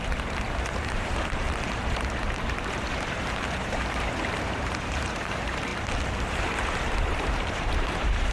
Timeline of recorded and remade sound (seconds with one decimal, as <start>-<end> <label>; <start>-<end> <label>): 0.0-5.7 remade; 5.7-6.3 recorded; 6.3-8.3 remade